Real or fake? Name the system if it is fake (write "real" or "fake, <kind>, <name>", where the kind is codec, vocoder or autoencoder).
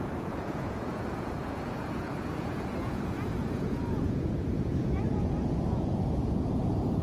fake, vocoder, Vocos